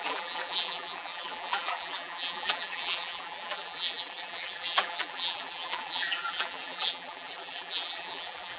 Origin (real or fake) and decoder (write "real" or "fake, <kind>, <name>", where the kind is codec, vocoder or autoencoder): fake, vocoder, BigVGAN v2